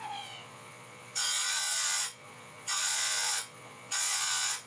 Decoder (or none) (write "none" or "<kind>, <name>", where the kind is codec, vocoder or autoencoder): vocoder, Vocos